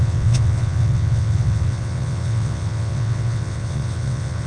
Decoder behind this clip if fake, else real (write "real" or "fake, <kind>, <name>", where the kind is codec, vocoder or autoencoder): fake, vocoder, WaveNeXt